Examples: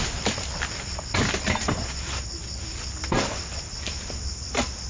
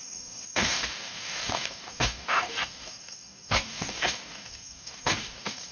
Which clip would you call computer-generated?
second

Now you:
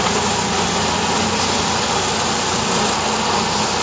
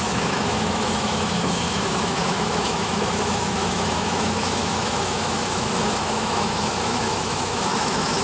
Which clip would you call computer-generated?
second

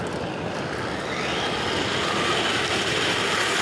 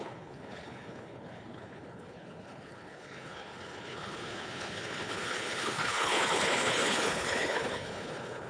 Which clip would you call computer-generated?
second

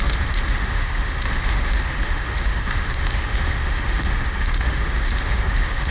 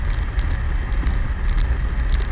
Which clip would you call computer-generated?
first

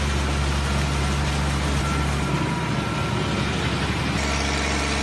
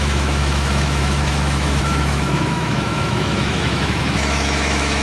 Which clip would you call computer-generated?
second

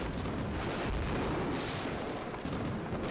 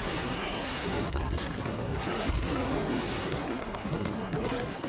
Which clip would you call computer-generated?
second